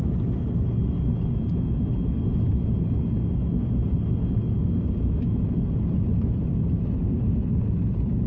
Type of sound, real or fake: real